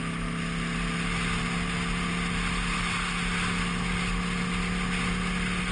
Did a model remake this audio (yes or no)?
no